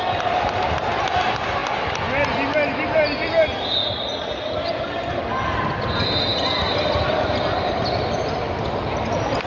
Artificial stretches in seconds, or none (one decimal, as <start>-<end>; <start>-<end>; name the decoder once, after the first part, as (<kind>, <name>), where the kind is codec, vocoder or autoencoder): 3.8-4.6 (vocoder, Vocos)